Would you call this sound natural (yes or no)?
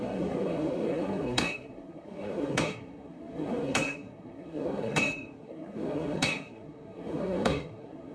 no